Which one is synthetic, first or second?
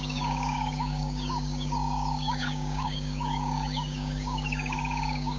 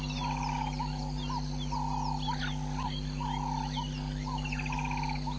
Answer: first